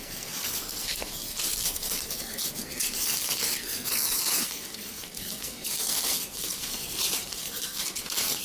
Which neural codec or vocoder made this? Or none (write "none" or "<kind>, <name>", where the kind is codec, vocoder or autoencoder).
codec, SNAC